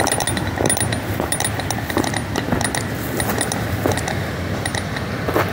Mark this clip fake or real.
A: real